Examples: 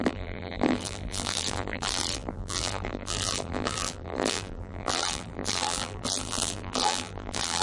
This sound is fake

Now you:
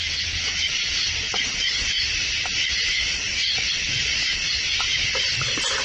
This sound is real